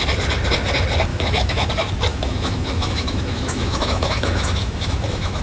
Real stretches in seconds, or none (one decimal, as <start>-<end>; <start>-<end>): 0.0-1.1; 1.7-2.1